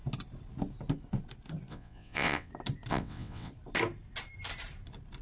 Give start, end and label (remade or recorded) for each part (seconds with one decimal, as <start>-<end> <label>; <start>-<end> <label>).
0.0-1.7 recorded; 1.7-2.5 remade; 2.5-2.9 recorded; 2.9-3.5 remade; 3.5-5.2 recorded